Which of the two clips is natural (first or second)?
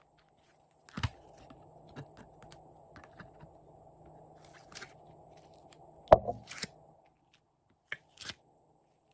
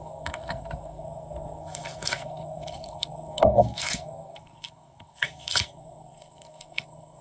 first